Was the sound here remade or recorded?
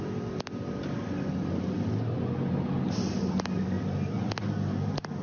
recorded